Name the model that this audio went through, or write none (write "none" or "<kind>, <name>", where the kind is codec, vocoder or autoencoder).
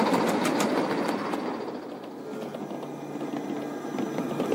none